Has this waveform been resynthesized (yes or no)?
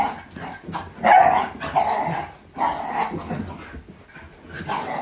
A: no